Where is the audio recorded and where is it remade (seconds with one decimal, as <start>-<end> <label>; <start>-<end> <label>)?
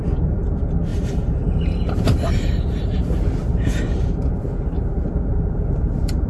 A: 0.0-6.3 remade